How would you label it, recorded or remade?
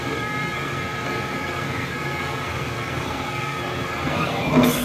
remade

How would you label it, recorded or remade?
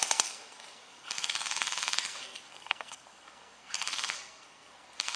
remade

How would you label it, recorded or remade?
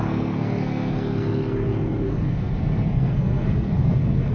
remade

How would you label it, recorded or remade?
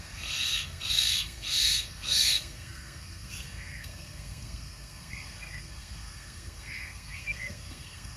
remade